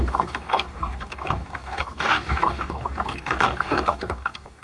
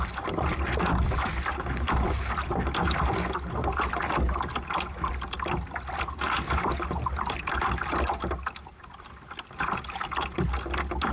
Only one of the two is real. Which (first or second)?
second